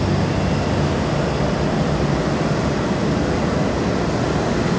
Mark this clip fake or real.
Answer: real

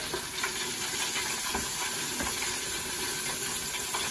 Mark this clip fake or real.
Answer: real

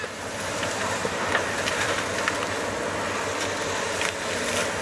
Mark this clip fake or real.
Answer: real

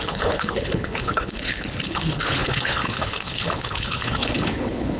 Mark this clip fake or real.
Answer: fake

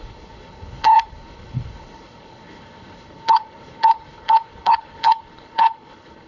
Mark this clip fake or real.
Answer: fake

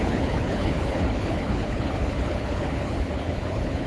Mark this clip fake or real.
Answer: fake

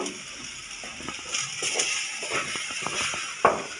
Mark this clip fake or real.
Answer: real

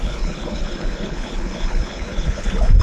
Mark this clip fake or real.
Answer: fake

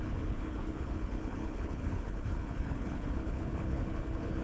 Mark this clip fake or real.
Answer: fake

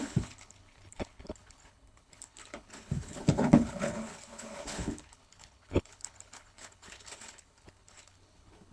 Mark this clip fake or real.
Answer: fake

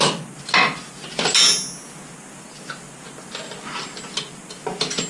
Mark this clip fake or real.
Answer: real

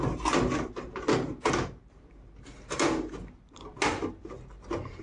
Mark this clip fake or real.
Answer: real